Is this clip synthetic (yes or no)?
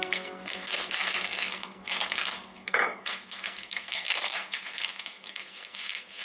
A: yes